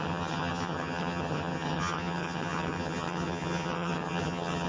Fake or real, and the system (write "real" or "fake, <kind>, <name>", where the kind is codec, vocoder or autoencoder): fake, vocoder, HiFi-GAN